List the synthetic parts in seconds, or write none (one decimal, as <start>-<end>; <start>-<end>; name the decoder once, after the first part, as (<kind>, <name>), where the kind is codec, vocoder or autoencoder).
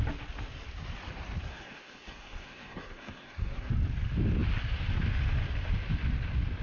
1.5-3.7 (codec, SNAC)